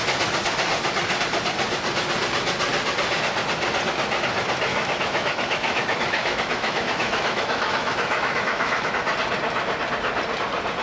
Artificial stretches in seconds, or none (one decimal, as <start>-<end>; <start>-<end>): 4.7-8.9